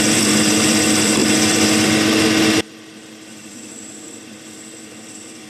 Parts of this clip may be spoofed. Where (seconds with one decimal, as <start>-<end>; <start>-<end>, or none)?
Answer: 0.0-1.2; 3.3-5.5

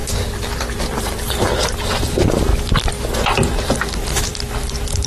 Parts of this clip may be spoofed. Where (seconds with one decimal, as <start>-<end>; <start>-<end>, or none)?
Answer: 1.0-2.5; 3.1-5.1